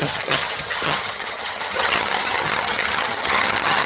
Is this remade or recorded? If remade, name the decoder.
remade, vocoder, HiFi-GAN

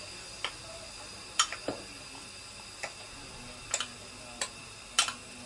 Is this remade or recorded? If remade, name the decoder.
recorded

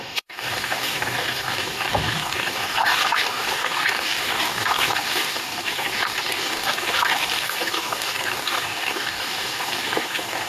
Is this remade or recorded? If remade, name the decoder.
remade, codec, DAC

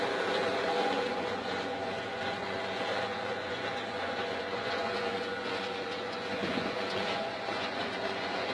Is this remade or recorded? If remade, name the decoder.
remade, vocoder, Vocos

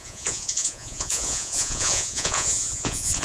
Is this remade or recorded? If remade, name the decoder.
remade, vocoder, Vocos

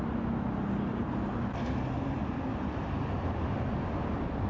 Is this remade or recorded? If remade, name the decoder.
recorded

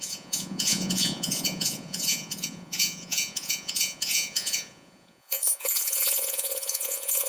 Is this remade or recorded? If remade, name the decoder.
remade, vocoder, Vocos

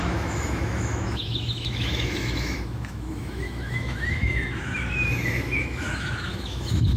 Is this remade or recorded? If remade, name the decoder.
remade, autoencoder, DAC-VAE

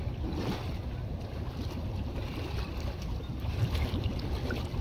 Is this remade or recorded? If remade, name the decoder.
remade, vocoder, BigVGAN v2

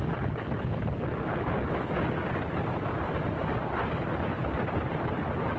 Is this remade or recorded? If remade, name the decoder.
recorded